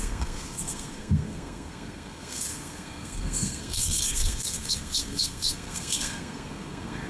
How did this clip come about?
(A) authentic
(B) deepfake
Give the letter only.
B